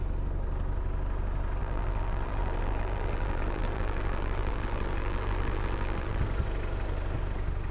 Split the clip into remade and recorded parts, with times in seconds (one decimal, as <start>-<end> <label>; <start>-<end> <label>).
0.0-1.6 recorded; 1.6-6.2 remade; 6.2-7.7 recorded

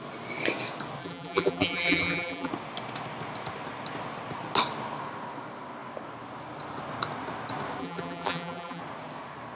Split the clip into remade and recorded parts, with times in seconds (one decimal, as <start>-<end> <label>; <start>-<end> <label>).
0.0-1.0 recorded; 1.0-2.5 remade; 2.5-7.8 recorded; 7.8-8.8 remade; 8.8-9.6 recorded